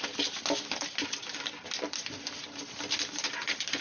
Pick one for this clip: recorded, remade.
recorded